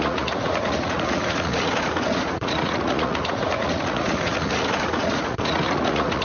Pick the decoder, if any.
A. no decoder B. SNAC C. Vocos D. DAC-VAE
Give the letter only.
C